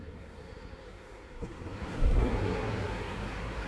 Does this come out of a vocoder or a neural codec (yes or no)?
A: yes